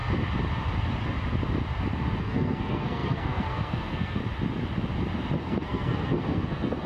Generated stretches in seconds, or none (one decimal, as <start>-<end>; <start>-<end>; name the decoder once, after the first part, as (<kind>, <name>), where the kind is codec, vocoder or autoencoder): 2.2-4.2 (codec, SNAC); 5.4-6.9

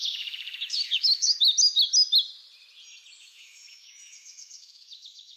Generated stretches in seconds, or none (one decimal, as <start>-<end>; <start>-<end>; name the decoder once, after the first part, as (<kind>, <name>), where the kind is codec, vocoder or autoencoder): 0.0-1.5 (autoencoder, DAC-VAE); 3.2-5.4

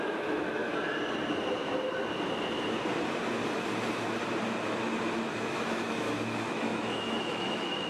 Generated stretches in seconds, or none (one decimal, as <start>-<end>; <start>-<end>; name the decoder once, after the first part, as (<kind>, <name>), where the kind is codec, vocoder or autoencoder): 0.0-0.6 (autoencoder, DAC-VAE); 5.3-7.9

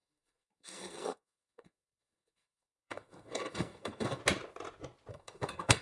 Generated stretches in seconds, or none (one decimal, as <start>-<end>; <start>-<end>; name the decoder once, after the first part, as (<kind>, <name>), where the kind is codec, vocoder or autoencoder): 0.0-4.2 (codec, SNAC); 5.1-5.8